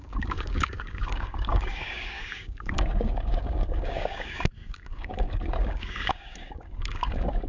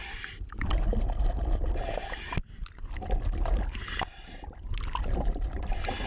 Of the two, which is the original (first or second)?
second